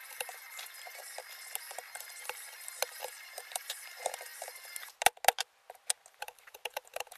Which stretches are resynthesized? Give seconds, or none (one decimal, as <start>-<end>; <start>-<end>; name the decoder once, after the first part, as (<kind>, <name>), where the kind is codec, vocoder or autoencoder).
0.0-0.4 (vocoder, BigVGAN v2); 2.9-4.3; 6.2-7.2